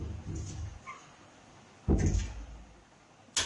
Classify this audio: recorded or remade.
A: recorded